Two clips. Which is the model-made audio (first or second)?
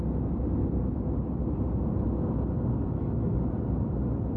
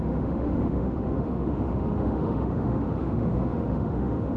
second